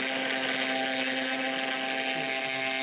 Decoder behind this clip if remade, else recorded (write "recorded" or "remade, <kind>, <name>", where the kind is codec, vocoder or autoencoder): recorded